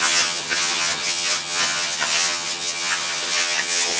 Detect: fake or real fake